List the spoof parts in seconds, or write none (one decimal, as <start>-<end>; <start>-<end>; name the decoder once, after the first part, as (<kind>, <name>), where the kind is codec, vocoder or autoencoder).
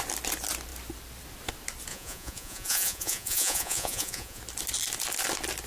1.9-4.4 (vocoder, Vocos)